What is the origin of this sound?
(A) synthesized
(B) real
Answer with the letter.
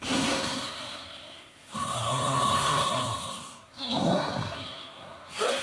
A